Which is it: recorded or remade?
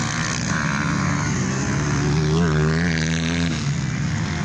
recorded